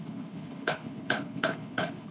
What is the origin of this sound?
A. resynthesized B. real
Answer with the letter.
A